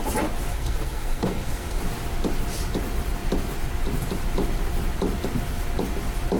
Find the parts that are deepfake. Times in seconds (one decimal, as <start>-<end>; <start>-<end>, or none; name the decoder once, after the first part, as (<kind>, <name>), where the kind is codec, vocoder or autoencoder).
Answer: 0.5-1.8 (codec, SNAC)